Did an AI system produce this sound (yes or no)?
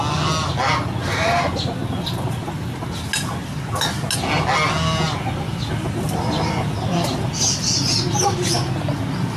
no